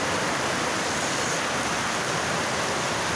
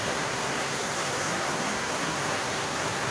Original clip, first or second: first